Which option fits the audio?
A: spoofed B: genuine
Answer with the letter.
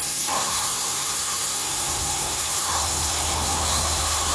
A